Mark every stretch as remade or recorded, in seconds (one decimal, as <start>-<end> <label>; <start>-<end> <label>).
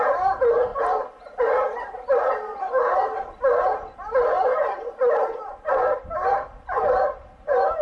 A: 0.0-7.8 recorded